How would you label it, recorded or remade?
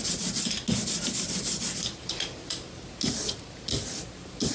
recorded